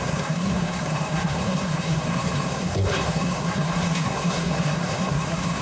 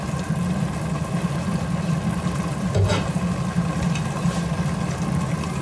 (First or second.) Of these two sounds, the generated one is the first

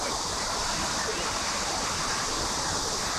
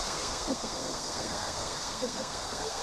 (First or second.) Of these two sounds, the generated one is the second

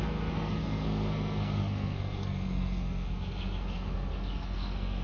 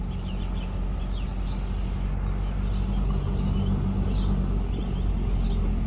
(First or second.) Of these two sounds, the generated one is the first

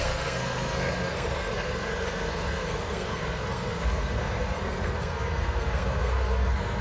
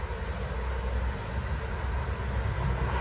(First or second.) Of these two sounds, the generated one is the first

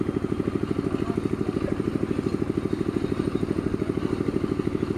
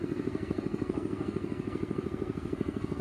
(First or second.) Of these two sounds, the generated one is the second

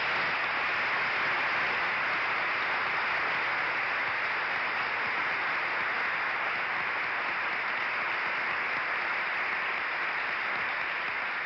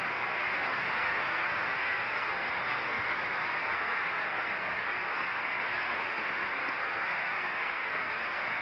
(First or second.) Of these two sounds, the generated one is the second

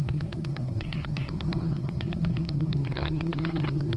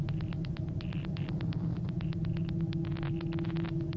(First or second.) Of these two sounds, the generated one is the first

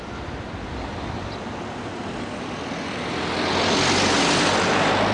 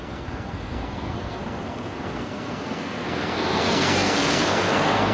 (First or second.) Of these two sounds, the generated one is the second